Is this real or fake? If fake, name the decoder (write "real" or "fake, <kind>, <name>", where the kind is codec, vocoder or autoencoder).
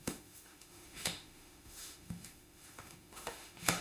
fake, autoencoder, DAC-VAE